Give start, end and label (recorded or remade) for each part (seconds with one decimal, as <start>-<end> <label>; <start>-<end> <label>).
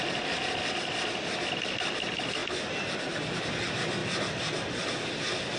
0.0-5.6 recorded